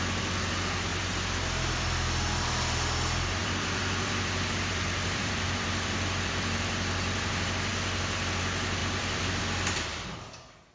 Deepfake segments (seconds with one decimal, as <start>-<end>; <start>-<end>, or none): 0.9-2.5; 3.4-7.3; 8.8-9.4